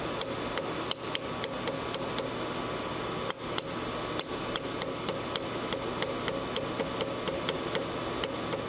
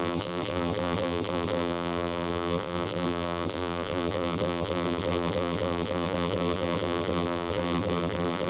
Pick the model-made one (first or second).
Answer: second